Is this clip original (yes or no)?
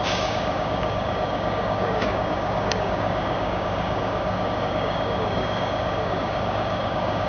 no